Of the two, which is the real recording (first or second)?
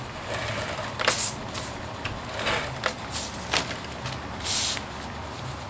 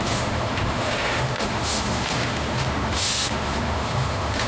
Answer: first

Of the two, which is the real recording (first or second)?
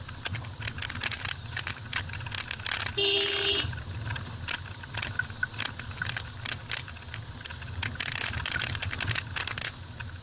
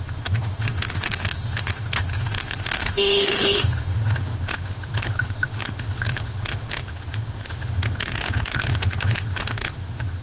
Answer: first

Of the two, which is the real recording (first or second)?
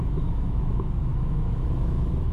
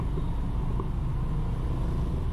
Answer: second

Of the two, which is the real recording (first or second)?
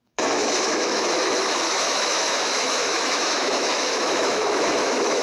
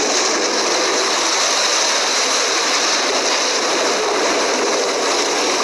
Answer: second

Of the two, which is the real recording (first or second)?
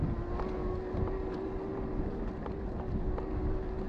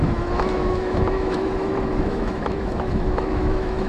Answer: first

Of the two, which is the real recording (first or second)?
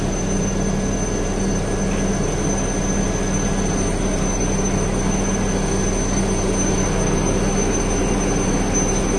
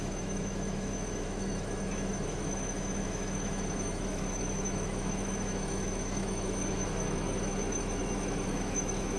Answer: first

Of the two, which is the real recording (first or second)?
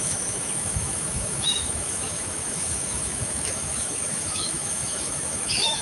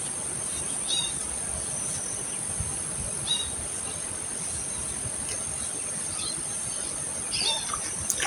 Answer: second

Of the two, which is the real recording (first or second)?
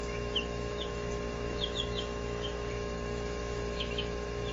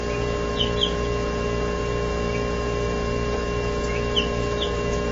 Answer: second